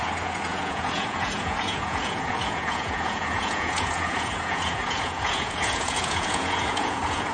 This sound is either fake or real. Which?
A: fake